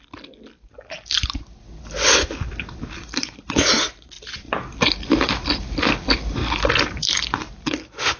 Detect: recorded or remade recorded